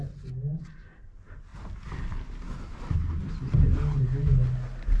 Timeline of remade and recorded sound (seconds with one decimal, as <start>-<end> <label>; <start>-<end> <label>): 0.0-5.0 recorded